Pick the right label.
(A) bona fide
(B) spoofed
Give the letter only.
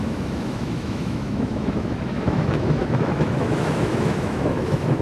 B